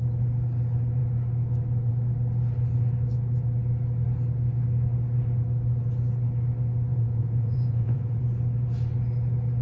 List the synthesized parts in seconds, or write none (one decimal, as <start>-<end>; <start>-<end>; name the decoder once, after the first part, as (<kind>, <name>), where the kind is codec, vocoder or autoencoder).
6.9-8.2 (vocoder, Vocos)